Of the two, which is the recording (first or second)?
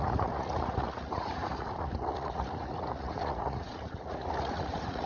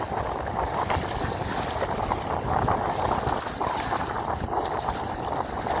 second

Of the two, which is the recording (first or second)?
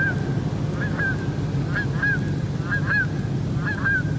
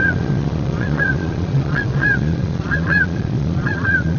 first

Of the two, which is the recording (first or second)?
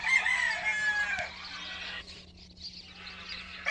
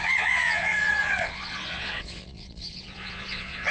first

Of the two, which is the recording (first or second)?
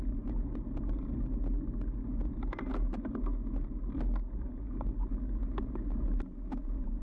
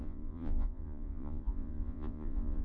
first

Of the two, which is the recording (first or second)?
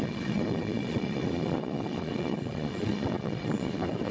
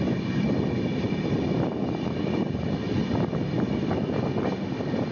second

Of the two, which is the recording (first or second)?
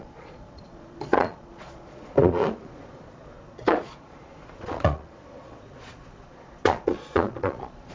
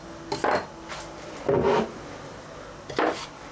second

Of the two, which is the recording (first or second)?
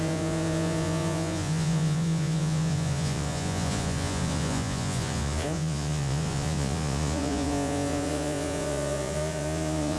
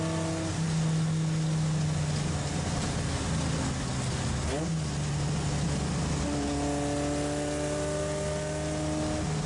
second